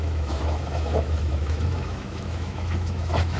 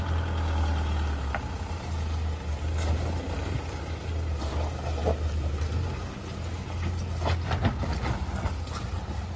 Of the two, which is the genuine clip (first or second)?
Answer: second